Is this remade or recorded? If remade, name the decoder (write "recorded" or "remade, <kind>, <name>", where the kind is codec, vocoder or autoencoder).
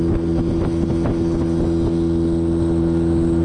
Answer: recorded